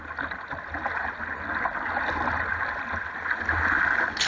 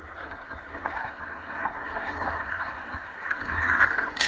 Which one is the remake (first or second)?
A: second